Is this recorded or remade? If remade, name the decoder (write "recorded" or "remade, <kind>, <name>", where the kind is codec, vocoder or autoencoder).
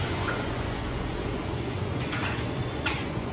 remade, vocoder, Vocos